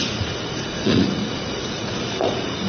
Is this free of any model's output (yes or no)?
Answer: no